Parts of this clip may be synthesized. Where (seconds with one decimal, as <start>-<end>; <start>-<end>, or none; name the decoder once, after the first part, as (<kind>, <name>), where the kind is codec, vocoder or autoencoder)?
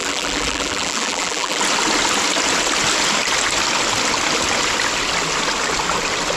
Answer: 0.0-1.6 (vocoder, BigVGAN v2)